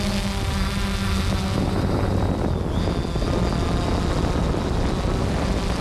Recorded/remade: recorded